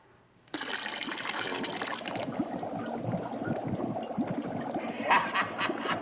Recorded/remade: recorded